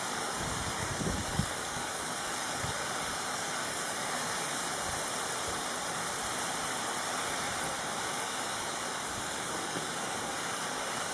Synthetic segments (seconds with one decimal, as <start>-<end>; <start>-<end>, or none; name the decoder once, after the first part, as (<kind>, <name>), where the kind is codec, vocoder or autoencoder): 0.0-4.6 (codec, DAC); 8.0-11.1